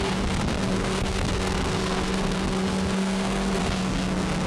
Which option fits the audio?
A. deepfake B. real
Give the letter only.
A